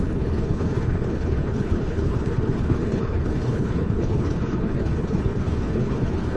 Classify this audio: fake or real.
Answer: fake